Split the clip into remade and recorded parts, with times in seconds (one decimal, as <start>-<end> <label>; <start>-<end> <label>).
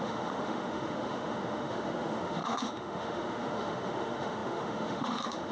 0.0-5.5 remade